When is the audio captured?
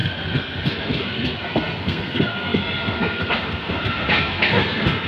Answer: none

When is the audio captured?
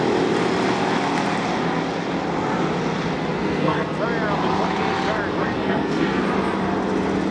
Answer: 0.0-3.3; 4.0-5.4; 6.2-7.3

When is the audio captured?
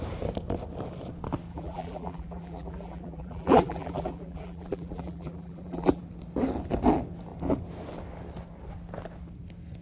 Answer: 0.0-1.5; 6.0-9.8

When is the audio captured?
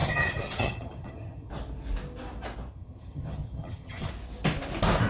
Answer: 1.5-2.7; 4.1-5.1